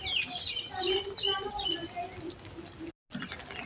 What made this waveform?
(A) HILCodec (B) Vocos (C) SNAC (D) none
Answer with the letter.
D